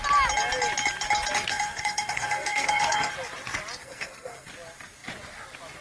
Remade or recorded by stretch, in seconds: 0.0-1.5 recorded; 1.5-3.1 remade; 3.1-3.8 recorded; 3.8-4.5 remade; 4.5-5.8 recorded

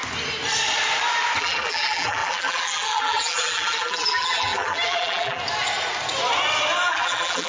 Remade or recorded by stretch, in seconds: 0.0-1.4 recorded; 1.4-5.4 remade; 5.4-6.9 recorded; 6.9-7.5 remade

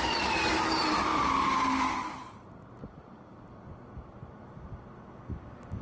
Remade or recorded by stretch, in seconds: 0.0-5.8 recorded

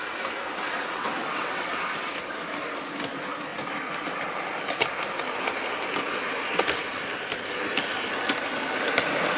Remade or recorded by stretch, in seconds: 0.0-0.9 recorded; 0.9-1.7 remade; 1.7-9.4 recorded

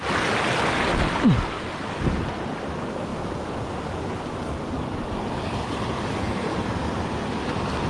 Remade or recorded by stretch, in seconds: 0.0-7.9 recorded

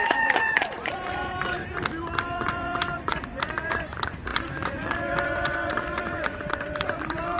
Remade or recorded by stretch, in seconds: 0.0-1.6 remade; 1.6-2.2 recorded; 2.2-7.4 remade

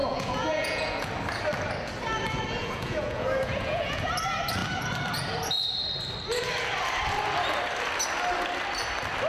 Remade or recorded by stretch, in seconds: 0.0-1.1 remade; 1.1-2.6 recorded; 2.6-4.1 remade; 4.1-9.3 recorded